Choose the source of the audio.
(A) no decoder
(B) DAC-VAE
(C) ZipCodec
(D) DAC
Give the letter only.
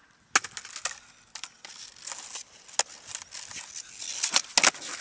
A